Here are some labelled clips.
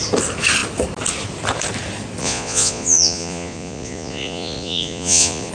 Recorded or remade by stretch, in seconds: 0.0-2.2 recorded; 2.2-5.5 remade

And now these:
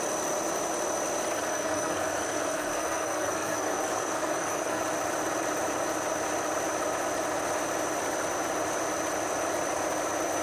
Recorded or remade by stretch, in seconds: 0.0-1.5 recorded; 1.5-4.8 remade; 4.8-10.4 recorded

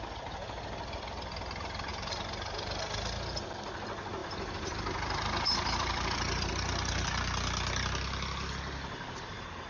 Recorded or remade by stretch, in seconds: 0.0-1.9 recorded; 1.9-2.8 remade; 2.8-4.2 recorded; 4.2-6.5 remade; 6.5-9.7 recorded

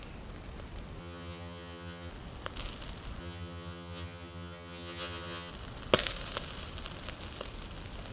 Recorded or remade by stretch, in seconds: 0.0-1.0 recorded; 1.0-2.1 remade; 2.1-3.2 recorded; 3.2-5.5 remade; 5.5-8.1 recorded

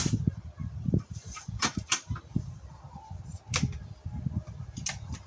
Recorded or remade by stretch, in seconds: 0.0-0.6 recorded; 0.6-3.1 remade; 3.1-5.3 recorded

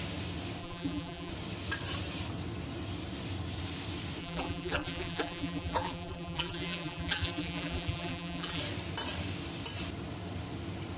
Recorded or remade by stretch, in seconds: 0.0-0.6 recorded; 0.6-1.3 remade; 1.3-4.2 recorded; 4.2-8.6 remade; 8.6-11.0 recorded